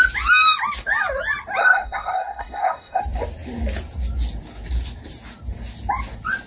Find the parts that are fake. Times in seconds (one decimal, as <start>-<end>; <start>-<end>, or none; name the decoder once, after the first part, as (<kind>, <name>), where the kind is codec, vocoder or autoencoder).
1.6-3.0 (codec, SNAC)